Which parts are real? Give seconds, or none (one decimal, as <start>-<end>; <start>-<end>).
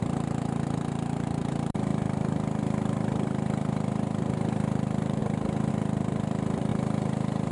1.9-2.6; 5.2-5.7